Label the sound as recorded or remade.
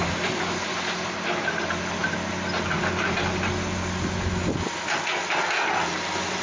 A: recorded